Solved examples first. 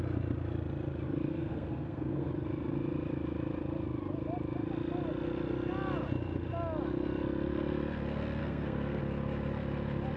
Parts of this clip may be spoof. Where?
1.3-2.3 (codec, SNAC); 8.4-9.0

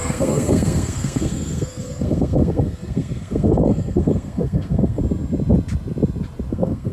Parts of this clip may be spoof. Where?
0.0-5.0 (codec, SNAC); 6.5-6.9

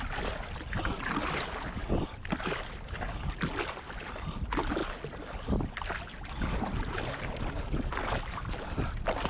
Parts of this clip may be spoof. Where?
none